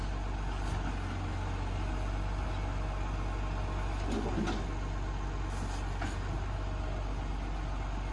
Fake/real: real